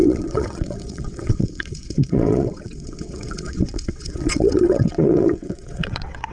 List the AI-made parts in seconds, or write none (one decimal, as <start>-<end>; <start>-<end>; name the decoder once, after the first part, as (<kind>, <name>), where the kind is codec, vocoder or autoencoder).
0.0-6.3 (vocoder, WaveNeXt)